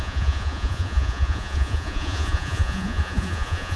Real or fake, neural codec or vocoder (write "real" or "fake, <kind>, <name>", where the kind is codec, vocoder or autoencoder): fake, vocoder, Vocos